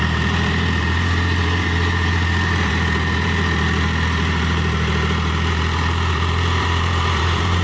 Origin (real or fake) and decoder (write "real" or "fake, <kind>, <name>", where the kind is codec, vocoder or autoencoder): fake, vocoder, BigVGAN v2